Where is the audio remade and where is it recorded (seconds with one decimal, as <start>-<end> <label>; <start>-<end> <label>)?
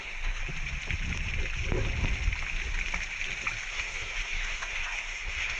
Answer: 0.0-0.4 remade; 0.4-3.7 recorded; 3.7-5.6 remade